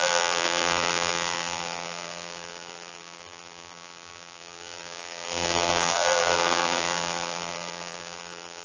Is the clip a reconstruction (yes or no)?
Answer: yes